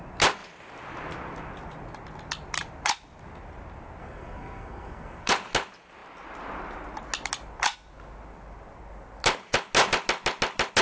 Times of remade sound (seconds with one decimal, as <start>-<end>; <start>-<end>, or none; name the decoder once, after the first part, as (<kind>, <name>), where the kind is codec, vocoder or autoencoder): 4.0-5.3 (codec, SNAC)